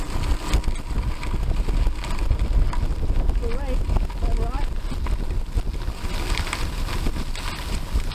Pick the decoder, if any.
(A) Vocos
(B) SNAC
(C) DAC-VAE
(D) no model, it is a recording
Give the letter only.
D